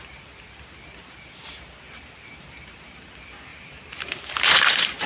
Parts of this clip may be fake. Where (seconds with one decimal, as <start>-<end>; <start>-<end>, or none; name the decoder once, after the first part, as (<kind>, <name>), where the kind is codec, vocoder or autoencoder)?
3.5-5.1 (vocoder, BigVGAN v2)